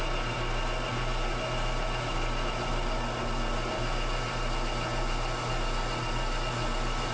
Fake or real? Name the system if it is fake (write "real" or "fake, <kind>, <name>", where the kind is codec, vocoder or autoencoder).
real